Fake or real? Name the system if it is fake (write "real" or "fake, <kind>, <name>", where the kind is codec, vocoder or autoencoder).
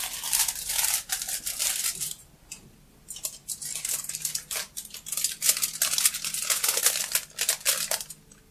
real